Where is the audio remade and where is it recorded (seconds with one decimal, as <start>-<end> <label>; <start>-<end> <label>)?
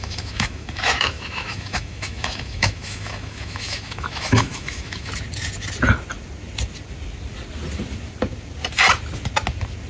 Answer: 0.0-5.1 remade; 5.1-9.9 recorded